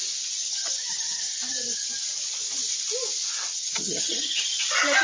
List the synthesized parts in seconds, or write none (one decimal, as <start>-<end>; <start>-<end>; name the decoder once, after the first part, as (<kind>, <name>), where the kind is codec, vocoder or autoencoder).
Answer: 0.4-1.9 (vocoder, HiFi-GAN); 3.5-4.6